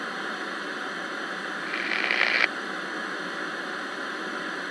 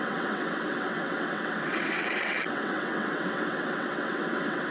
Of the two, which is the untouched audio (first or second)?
first